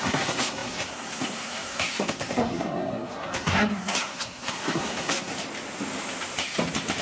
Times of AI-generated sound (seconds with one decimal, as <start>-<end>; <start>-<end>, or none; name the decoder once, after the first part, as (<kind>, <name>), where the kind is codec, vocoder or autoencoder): 0.0-5.3 (codec, SNAC)